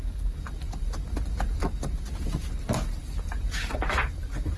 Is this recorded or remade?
recorded